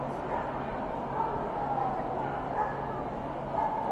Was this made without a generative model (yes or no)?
yes